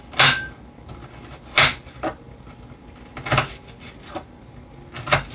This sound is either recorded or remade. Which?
recorded